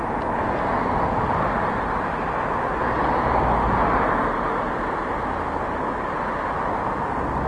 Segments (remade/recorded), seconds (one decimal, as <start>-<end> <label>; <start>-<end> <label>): 0.0-7.5 recorded

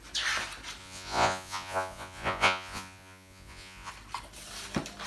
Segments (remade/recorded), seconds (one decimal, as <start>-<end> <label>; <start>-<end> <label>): 0.0-0.8 recorded; 0.8-3.9 remade; 3.9-5.1 recorded

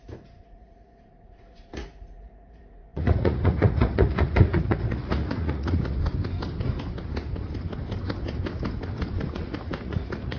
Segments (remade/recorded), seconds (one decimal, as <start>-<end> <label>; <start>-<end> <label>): 0.0-6.0 remade; 6.0-9.3 recorded; 9.3-10.4 remade

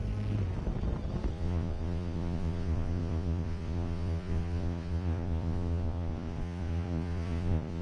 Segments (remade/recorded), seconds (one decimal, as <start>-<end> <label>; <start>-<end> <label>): 0.0-1.3 recorded; 1.3-7.8 remade